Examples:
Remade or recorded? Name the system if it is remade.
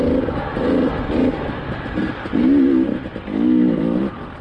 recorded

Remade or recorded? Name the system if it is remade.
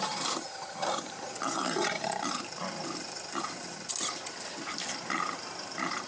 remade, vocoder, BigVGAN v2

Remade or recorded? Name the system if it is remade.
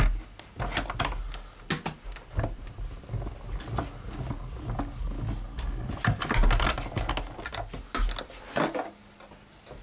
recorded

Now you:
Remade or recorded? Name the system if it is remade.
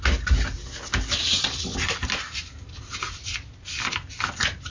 recorded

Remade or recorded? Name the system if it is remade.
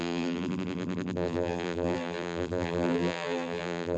remade, vocoder, BigVGAN v2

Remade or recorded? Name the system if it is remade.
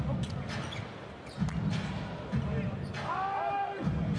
recorded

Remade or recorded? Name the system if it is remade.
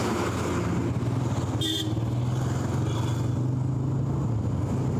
recorded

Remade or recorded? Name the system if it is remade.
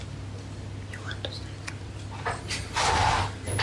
recorded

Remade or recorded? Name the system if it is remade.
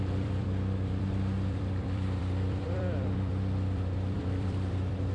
remade, vocoder, BigVGAN v2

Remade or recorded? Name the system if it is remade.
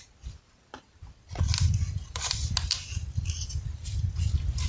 recorded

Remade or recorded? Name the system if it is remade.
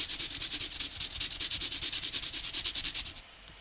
recorded